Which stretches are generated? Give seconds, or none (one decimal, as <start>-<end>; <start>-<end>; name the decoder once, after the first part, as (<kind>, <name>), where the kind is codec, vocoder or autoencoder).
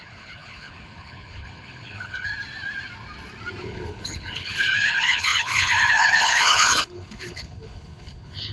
0.0-2.3 (codec, HILCodec); 3.6-8.5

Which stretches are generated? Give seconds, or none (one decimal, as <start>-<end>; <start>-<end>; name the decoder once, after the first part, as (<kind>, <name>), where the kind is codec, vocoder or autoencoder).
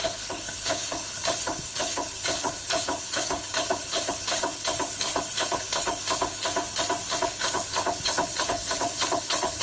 0.0-6.4 (codec, HILCodec); 7.2-9.6